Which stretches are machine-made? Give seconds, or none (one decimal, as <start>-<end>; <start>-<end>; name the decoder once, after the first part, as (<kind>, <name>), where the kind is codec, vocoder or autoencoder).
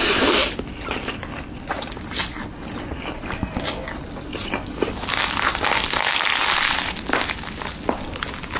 none